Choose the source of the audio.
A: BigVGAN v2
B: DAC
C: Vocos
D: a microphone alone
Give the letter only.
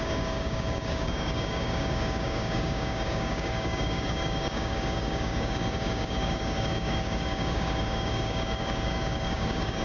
B